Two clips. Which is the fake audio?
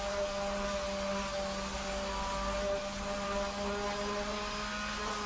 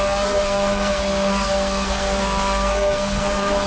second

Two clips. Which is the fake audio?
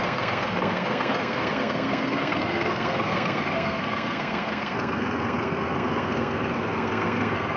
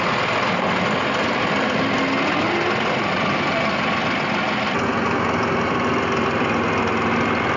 first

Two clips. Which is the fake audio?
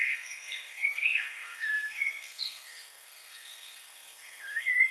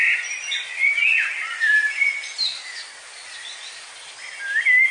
first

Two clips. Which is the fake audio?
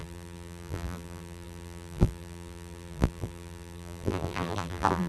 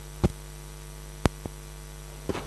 first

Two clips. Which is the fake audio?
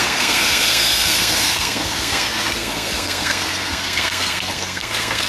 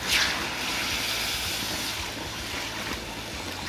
first